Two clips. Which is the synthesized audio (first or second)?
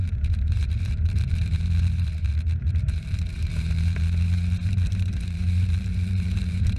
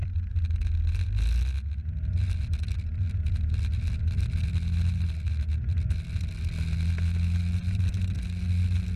first